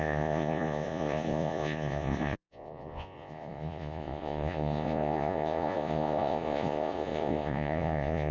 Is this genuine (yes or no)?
no